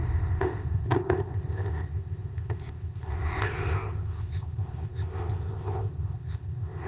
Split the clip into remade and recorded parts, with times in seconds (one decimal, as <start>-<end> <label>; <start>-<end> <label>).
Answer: 0.0-6.9 remade